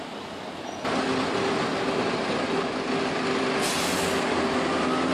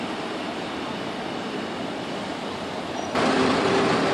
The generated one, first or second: second